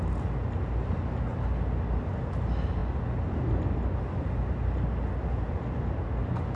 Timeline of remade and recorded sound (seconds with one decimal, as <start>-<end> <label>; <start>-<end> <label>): 0.0-6.6 recorded